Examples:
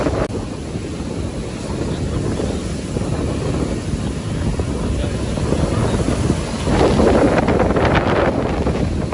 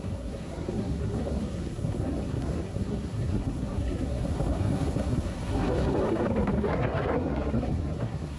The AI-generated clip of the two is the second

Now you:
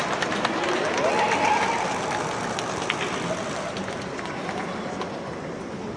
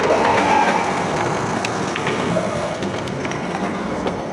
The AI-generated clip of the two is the second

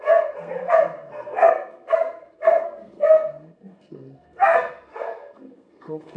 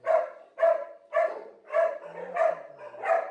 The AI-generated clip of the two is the first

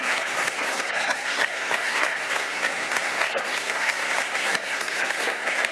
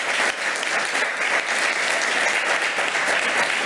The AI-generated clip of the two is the first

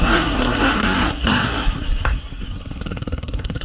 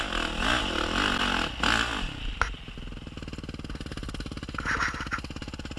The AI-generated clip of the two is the first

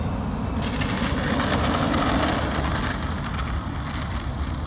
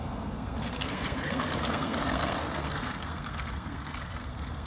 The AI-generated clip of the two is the second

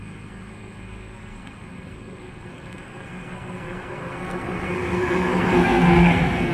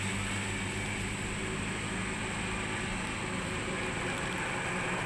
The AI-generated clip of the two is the first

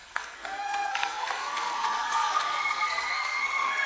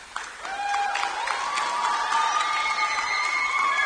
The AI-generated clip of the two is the first